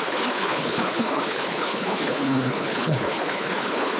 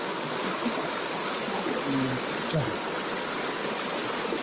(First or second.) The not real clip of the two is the first